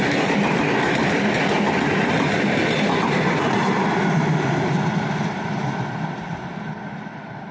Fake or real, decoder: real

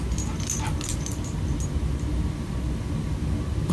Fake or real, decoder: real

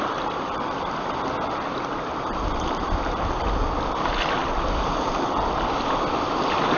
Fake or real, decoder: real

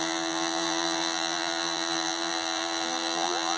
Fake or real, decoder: fake, vocoder, BigVGAN v2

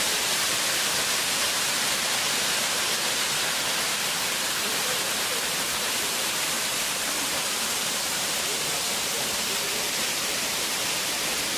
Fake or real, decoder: fake, vocoder, BigVGAN v2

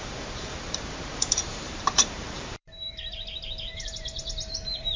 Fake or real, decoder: fake, vocoder, BigVGAN v2